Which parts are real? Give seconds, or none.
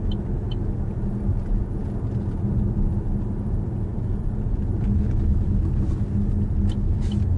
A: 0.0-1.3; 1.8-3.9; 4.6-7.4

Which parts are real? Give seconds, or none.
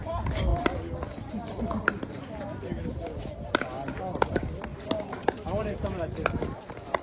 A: 0.0-7.0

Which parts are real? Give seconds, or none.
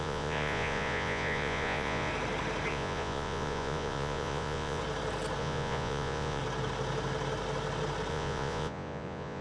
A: 2.1-2.7; 4.8-5.4; 6.4-8.1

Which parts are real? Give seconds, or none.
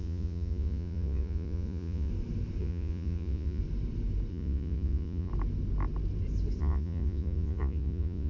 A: 2.1-2.6; 3.6-4.3; 5.3-6.6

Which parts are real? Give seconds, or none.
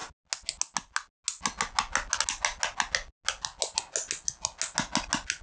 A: 0.0-5.4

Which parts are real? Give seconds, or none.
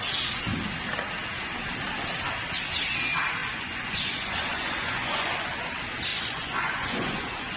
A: 0.0-3.4; 5.6-6.1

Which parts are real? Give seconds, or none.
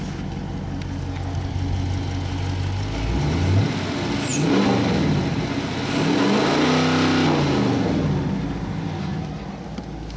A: 0.0-10.2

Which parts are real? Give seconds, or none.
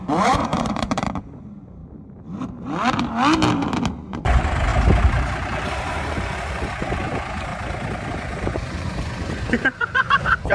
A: 1.8-3.9; 4.7-5.8; 7.5-8.1